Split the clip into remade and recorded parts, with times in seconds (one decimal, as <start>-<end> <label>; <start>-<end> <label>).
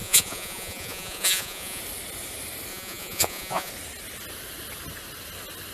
0.0-1.8 remade; 1.8-2.7 recorded; 2.7-3.7 remade; 3.7-5.7 recorded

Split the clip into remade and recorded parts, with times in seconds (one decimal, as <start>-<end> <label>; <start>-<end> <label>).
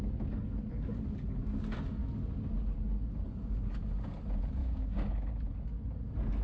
0.0-4.6 recorded; 4.6-5.3 remade; 5.3-6.4 recorded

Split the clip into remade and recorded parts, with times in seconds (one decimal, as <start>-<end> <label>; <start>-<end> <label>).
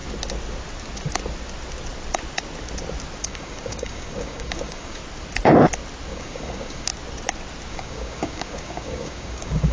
0.0-3.2 recorded; 3.2-5.0 remade; 5.0-6.1 recorded; 6.1-6.9 remade; 6.9-7.7 recorded; 7.7-9.7 remade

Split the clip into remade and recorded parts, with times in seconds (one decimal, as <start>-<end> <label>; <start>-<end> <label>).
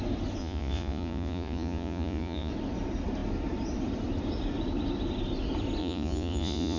0.0-0.4 recorded; 0.4-2.5 remade; 2.5-5.8 recorded; 5.8-6.8 remade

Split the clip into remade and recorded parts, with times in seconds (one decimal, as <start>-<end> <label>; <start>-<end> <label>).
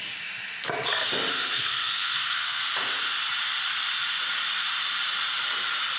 0.0-1.3 recorded; 1.3-2.6 remade; 2.6-6.0 recorded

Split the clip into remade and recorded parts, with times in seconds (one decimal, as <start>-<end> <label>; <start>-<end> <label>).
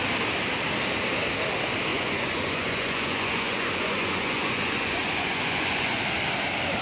0.0-1.9 recorded; 1.9-6.0 remade; 6.0-6.8 recorded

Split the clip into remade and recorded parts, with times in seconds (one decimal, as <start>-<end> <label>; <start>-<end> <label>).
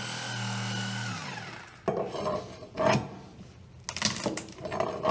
0.0-5.1 recorded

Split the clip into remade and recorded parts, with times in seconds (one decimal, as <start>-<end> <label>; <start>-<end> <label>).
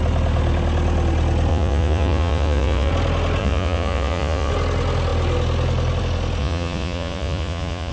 0.0-1.5 recorded; 1.5-2.9 remade; 2.9-3.4 recorded; 3.4-4.5 remade; 4.5-6.4 recorded; 6.4-7.9 remade